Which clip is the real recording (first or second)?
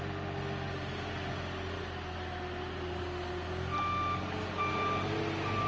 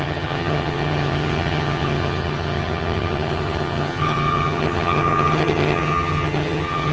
first